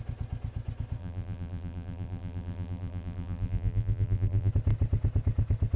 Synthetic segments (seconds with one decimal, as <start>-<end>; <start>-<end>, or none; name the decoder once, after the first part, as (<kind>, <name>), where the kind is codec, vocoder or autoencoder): 1.0-4.5 (vocoder, BigVGAN v2)